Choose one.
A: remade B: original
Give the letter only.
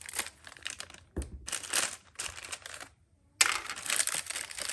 B